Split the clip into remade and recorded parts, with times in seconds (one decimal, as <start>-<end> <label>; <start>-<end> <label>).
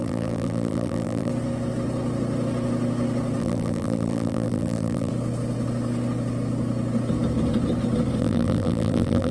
0.0-1.3 remade; 1.3-3.4 recorded; 3.4-5.1 remade; 5.1-8.2 recorded; 8.2-9.3 remade